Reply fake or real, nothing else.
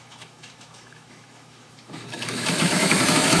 fake